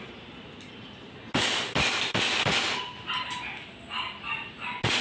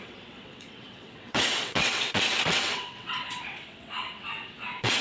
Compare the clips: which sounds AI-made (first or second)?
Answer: second